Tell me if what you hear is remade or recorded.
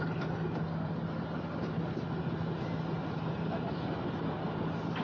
recorded